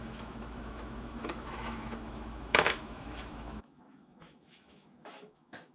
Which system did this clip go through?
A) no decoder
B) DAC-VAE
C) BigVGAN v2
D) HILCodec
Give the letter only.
B